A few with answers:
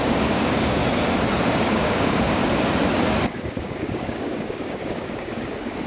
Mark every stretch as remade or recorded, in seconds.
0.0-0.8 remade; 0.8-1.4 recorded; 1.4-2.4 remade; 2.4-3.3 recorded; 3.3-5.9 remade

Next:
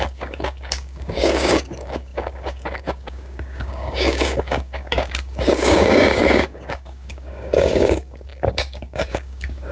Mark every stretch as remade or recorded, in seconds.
0.0-9.7 remade

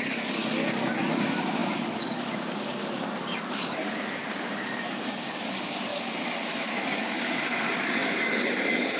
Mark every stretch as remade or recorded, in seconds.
0.0-9.0 remade

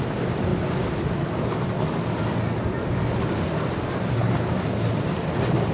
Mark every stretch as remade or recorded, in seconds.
0.0-5.7 recorded

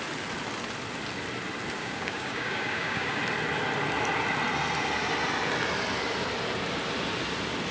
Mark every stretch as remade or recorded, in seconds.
0.0-1.8 recorded; 1.8-3.2 remade; 3.2-7.7 recorded

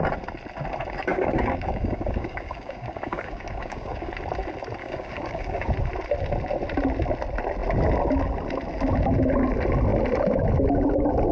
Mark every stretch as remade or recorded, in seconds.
0.0-1.1 recorded; 1.1-4.1 remade; 4.1-4.8 recorded; 4.8-5.7 remade; 5.7-11.3 recorded

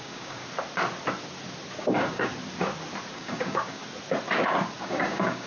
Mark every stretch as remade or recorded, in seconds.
0.0-0.4 remade; 0.4-1.8 recorded; 1.8-2.3 remade; 2.3-3.1 recorded; 3.1-3.8 remade; 3.8-4.8 recorded; 4.8-5.5 remade

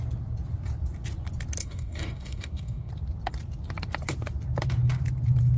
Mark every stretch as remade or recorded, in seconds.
0.0-1.6 recorded; 1.6-2.9 remade; 2.9-5.6 recorded